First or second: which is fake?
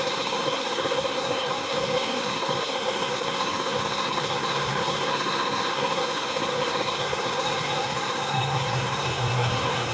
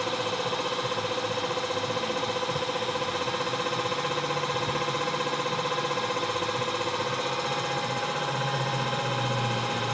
first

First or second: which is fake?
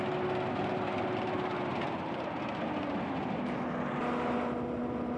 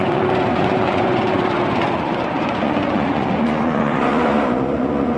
second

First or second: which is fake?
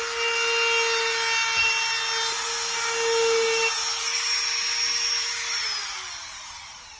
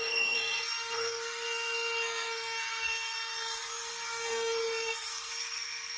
second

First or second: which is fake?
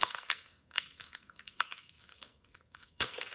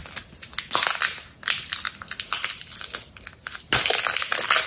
first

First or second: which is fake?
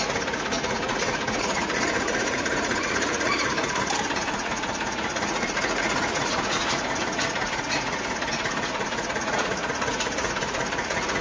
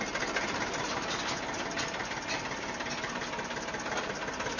first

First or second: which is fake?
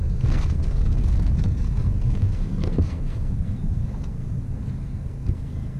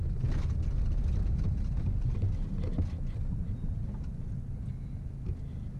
first